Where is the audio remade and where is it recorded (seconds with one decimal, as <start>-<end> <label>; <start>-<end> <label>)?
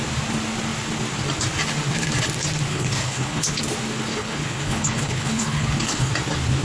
0.0-2.7 recorded; 2.7-3.6 remade; 3.6-4.1 recorded; 4.1-6.1 remade; 6.1-6.6 recorded